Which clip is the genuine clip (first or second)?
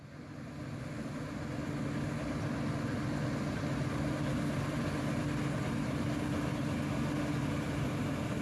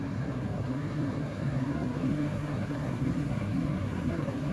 first